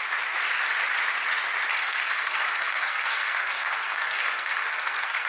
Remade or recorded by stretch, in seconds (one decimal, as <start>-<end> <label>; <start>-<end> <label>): 0.0-1.7 recorded; 1.7-5.3 remade